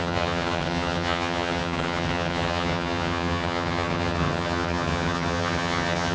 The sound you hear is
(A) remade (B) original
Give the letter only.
A